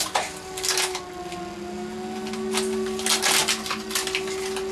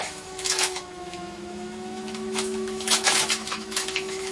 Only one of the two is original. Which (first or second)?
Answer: first